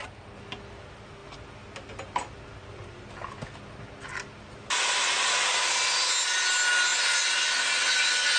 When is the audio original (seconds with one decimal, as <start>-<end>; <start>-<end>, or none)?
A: 0.0-8.4

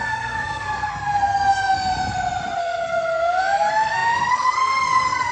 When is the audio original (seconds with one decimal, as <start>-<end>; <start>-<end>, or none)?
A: 1.9-2.6

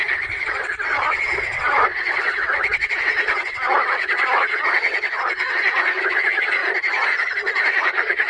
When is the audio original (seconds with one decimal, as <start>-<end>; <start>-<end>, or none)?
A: 6.6-7.8

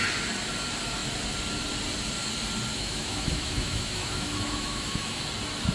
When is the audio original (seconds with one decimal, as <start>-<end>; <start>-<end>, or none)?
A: 0.0-2.7; 5.3-5.7

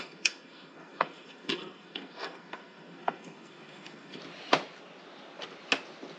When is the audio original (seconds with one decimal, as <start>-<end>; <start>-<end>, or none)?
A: 4.2-6.2

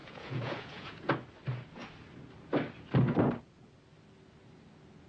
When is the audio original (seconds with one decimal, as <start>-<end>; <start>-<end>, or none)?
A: 1.1-5.1

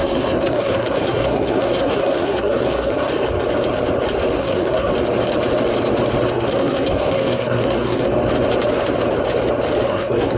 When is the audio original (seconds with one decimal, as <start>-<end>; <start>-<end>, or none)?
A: 3.1-4.4; 4.9-6.3; 8.1-9.9

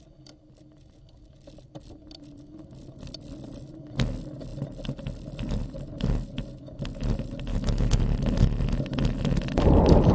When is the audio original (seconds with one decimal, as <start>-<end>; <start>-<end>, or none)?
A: 0.0-7.5; 8.0-10.1